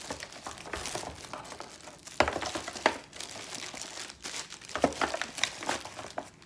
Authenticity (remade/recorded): recorded